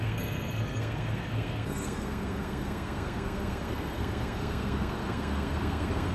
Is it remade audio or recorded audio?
remade